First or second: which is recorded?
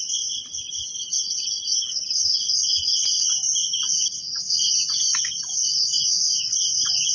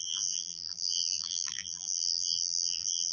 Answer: first